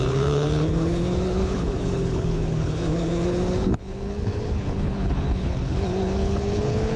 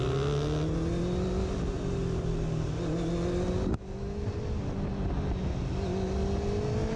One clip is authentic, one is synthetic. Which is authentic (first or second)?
second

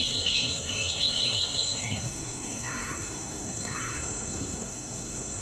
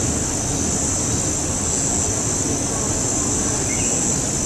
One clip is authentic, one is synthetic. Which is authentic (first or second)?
second